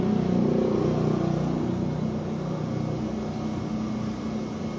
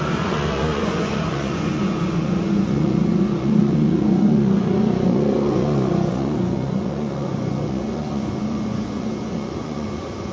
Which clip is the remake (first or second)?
second